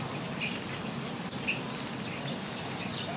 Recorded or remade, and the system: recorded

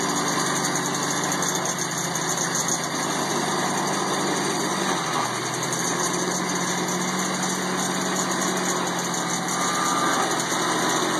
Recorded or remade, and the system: recorded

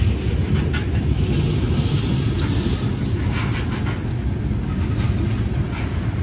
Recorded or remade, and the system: recorded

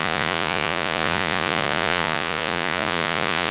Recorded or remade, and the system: remade, vocoder, Vocos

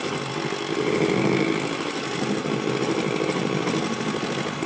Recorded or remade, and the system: recorded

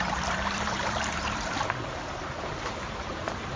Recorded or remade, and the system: remade, vocoder, BigVGAN v2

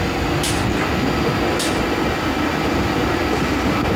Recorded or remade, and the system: recorded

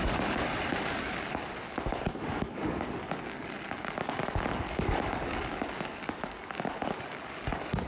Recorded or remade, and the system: remade, codec, DAC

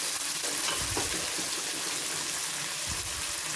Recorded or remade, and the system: recorded